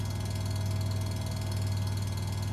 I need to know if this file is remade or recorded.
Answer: recorded